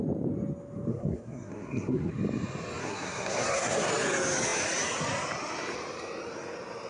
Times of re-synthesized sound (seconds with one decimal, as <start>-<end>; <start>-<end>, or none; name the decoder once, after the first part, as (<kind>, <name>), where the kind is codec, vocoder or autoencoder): 0.9-2.1 (codec, SNAC); 2.8-3.9